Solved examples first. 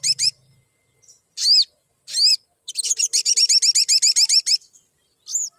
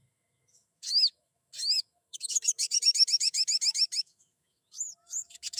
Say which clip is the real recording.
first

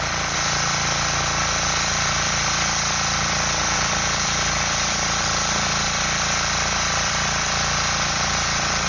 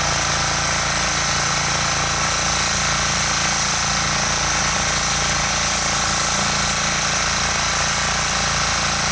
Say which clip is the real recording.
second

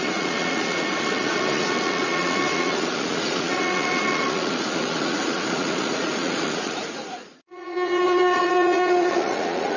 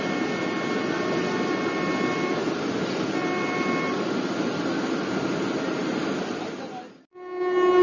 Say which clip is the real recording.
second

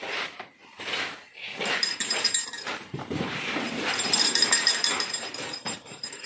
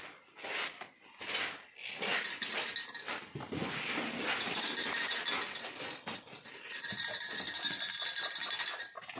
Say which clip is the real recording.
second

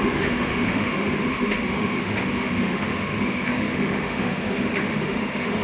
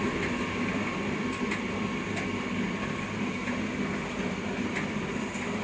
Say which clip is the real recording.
second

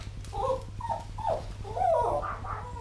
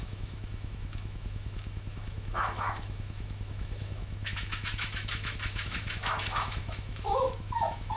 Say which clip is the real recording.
first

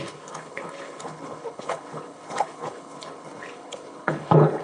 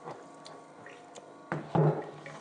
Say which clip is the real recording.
second